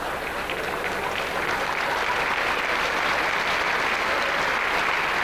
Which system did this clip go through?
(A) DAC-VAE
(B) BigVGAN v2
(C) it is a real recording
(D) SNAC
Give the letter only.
C